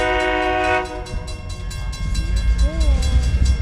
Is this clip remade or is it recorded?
recorded